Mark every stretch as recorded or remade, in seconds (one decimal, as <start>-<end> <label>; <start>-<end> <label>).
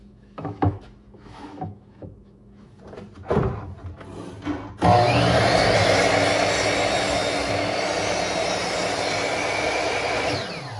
0.0-2.8 remade; 2.8-10.8 recorded